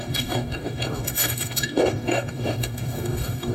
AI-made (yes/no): yes